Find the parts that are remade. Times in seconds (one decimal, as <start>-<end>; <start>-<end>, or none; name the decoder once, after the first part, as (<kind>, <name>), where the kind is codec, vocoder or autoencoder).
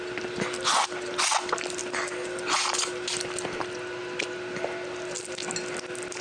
none